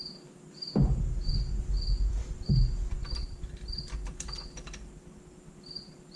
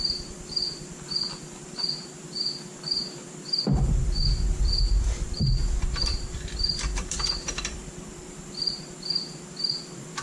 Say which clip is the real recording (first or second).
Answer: first